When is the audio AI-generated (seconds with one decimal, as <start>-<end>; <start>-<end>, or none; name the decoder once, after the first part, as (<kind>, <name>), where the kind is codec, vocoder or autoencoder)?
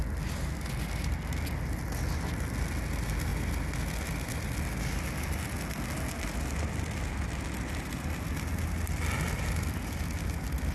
none